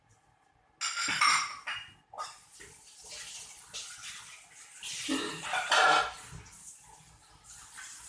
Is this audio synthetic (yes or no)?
no